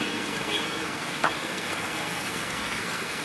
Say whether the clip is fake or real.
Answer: fake